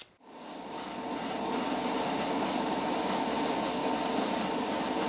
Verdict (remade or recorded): recorded